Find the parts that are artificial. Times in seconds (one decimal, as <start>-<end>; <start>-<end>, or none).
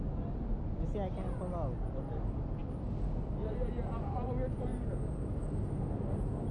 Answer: none